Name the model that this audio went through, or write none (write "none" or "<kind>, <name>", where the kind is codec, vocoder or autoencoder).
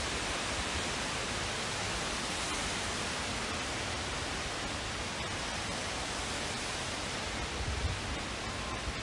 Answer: none